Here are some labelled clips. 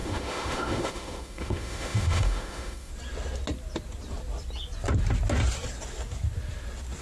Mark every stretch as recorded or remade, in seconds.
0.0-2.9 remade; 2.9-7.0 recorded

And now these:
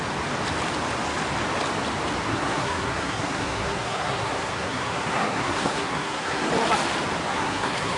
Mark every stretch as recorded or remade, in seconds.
0.0-2.3 recorded; 2.3-6.5 remade; 6.5-7.3 recorded; 7.3-8.0 remade

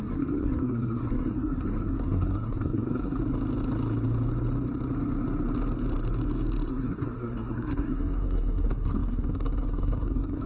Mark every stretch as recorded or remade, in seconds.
0.0-3.2 remade; 3.2-6.7 recorded; 6.7-10.5 remade